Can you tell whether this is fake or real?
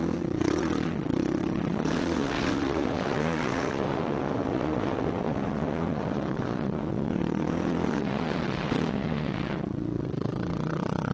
fake